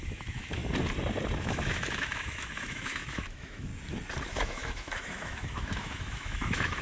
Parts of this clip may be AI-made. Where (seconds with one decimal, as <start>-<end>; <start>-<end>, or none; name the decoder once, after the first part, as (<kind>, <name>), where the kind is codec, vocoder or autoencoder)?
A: 0.0-0.6 (autoencoder, DAC-VAE); 1.4-3.7; 4.3-6.8